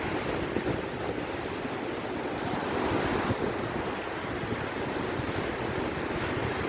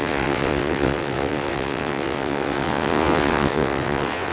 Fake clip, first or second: second